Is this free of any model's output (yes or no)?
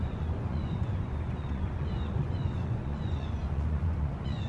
no